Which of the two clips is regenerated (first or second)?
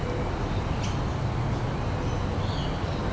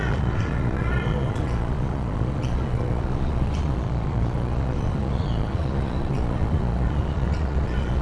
second